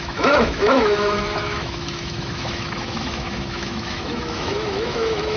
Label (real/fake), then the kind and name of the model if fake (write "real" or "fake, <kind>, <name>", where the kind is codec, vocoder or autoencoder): fake, autoencoder, DAC-VAE